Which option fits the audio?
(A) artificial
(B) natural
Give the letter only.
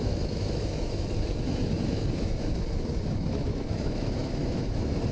A